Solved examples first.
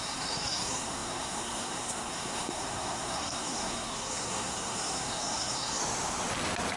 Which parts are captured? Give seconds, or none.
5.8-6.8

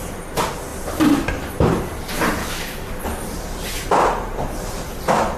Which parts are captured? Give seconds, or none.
0.0-2.4; 3.0-5.4

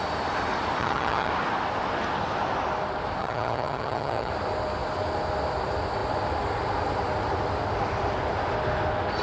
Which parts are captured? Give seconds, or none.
0.0-0.8; 1.3-3.2; 4.3-9.2